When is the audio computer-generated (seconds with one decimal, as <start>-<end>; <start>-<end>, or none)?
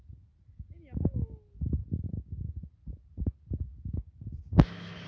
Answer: none